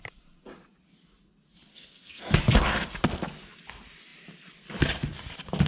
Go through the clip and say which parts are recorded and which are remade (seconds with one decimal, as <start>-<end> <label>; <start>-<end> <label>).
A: 0.0-1.7 recorded; 1.7-2.4 remade; 2.4-5.7 recorded

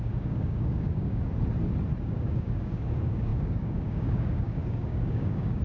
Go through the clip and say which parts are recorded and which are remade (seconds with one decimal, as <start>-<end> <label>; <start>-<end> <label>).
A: 0.0-1.3 remade; 1.3-2.0 recorded; 2.0-5.6 remade

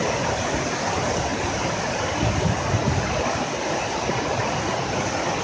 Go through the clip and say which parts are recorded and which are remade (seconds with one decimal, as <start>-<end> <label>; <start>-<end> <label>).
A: 0.0-5.4 recorded